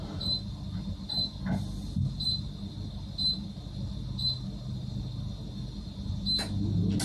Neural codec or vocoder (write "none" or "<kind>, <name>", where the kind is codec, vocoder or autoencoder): none